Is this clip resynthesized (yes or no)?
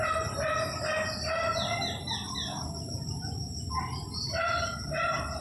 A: no